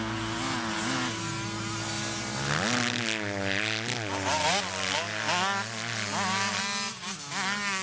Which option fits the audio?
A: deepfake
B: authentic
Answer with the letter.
B